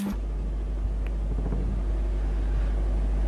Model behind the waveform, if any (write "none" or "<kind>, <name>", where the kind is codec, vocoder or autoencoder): none